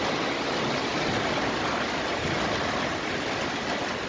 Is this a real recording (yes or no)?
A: yes